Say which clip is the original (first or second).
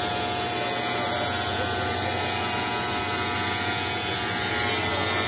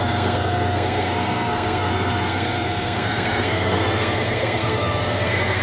first